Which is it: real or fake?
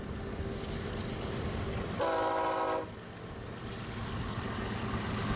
real